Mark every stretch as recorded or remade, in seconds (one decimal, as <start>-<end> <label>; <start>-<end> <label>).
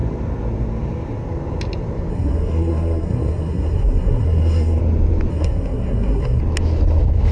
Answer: 0.0-2.1 recorded; 2.1-4.8 remade; 4.8-5.3 recorded; 5.3-6.4 remade; 6.4-7.3 recorded